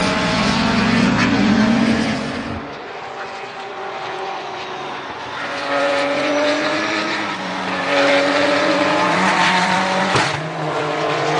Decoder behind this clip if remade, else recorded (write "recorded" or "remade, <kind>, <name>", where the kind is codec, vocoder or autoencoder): remade, vocoder, Vocos